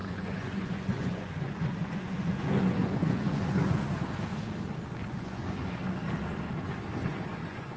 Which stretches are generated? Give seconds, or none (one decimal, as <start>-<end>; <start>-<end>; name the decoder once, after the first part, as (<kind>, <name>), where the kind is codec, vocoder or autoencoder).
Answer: 0.0-3.8 (vocoder, Vocos); 5.0-5.8; 7.0-7.8